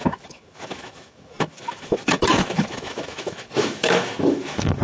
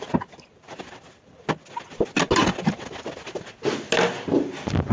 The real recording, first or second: second